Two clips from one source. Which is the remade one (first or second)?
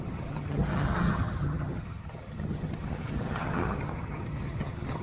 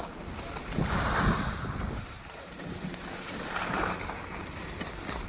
first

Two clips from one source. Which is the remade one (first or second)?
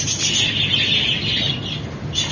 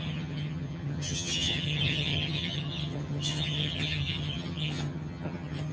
second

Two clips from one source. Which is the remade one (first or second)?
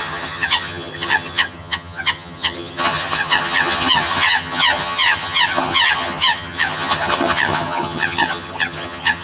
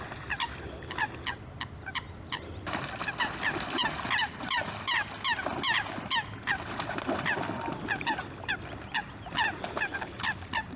first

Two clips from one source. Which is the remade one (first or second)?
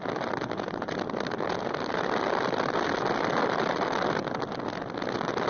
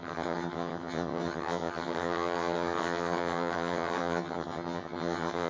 second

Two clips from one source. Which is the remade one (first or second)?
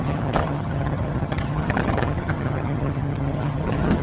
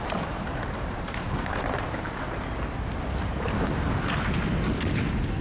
first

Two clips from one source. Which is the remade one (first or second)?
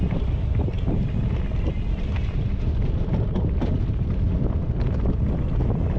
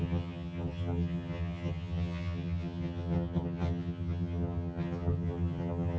second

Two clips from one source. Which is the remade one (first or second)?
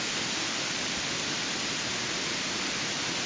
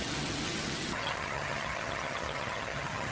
second